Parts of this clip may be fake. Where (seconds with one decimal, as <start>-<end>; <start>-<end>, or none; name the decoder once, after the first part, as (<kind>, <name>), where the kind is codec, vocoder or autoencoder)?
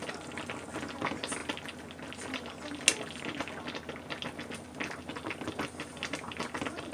none